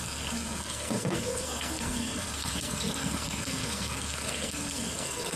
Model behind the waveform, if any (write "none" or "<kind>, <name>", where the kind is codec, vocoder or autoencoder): codec, SNAC